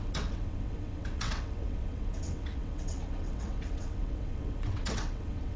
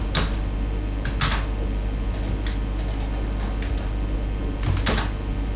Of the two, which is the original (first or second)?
second